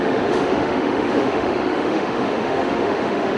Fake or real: fake